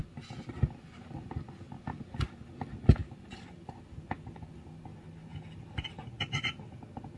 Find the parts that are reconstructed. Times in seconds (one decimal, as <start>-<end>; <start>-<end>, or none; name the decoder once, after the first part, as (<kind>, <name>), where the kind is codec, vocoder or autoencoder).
none

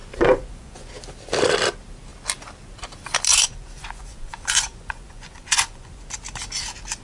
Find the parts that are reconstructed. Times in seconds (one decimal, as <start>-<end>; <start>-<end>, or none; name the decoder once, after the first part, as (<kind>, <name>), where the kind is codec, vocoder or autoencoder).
0.0-0.9 (vocoder, Vocos); 3.3-6.1